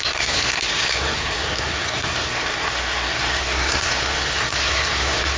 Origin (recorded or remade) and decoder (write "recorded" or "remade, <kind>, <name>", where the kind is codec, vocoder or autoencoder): remade, codec, SNAC